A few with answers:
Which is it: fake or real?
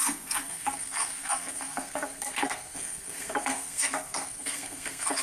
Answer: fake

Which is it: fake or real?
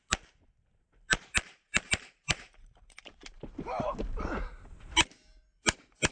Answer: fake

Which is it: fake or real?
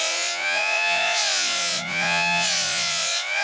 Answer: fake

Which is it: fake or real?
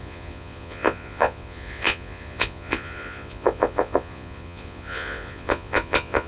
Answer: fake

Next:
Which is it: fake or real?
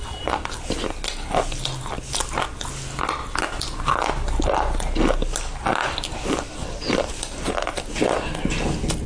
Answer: real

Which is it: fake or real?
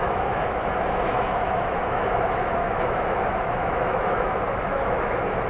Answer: fake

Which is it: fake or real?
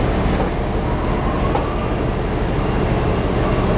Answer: real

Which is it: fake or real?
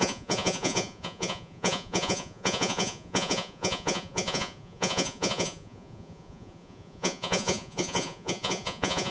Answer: fake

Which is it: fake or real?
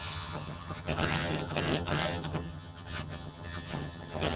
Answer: fake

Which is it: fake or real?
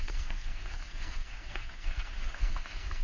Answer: fake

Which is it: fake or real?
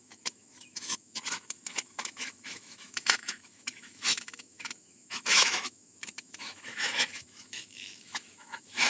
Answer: fake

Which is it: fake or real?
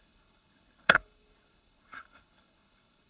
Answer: fake